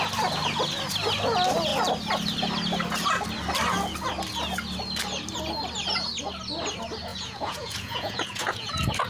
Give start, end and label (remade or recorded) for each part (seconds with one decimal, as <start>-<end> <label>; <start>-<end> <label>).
0.0-7.1 recorded; 7.1-8.7 remade; 8.7-9.1 recorded